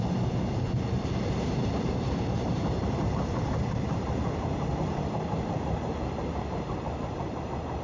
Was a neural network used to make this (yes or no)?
yes